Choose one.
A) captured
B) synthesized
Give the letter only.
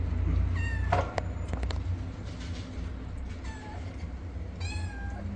A